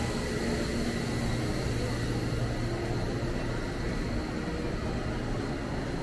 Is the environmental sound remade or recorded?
recorded